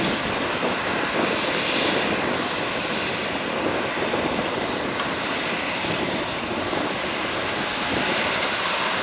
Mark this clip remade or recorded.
recorded